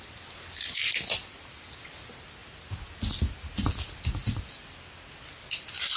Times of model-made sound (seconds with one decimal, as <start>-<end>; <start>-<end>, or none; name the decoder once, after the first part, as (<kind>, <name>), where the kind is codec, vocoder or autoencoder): none